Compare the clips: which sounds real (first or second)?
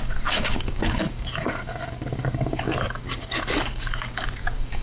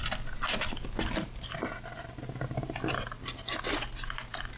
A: second